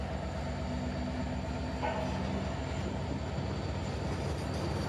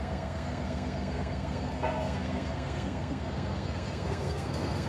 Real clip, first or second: first